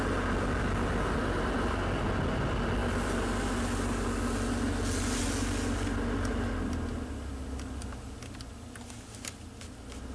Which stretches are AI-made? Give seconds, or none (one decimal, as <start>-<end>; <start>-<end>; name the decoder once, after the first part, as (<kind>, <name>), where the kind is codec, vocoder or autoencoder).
none